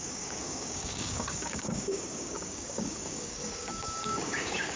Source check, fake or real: fake